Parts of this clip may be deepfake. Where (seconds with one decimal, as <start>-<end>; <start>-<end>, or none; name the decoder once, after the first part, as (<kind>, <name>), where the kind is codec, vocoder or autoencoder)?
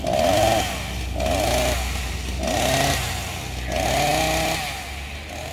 2.0-2.5 (vocoder, BigVGAN v2)